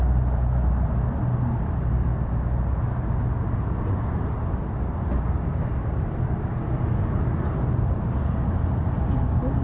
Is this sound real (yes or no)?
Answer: yes